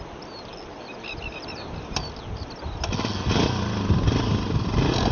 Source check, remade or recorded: recorded